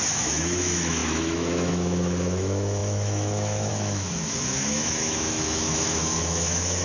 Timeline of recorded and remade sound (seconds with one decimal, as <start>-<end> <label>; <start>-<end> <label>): 0.0-6.8 remade